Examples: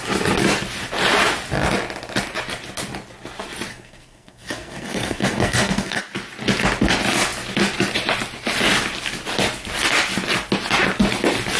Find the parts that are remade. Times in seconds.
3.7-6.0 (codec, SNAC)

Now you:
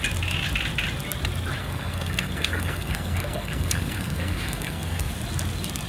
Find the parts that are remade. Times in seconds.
1.6-5.1 (codec, SNAC)

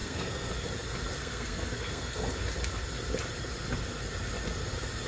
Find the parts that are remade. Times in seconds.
0.0-0.5 (codec, SNAC); 1.2-2.2

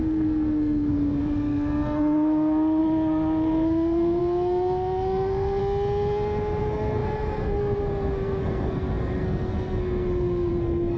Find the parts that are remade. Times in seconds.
0.0-5.6 (codec, SNAC); 6.6-11.0

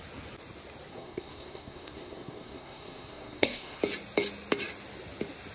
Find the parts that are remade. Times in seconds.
0.9-3.8 (codec, SNAC)

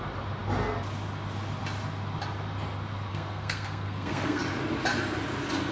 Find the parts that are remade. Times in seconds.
3.1-4.4 (codec, SNAC)